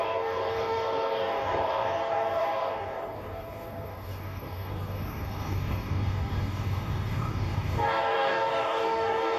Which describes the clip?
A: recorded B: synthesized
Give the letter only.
B